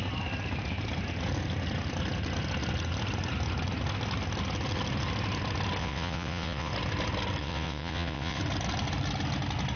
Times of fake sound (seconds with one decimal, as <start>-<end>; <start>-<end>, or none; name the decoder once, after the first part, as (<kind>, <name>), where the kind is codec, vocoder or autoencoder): 5.8-6.7 (vocoder, WaveNeXt); 7.4-8.4